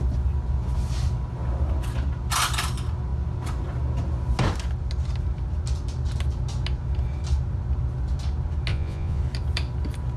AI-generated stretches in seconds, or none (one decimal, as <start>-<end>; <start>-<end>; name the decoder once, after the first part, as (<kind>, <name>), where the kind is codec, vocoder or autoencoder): 8.7-9.2 (vocoder, Vocos)